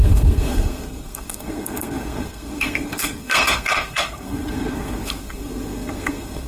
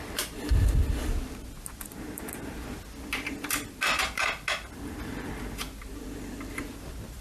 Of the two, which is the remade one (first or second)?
first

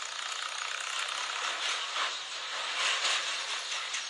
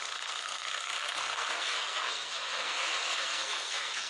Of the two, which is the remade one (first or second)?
second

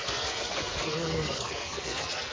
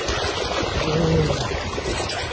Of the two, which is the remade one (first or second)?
first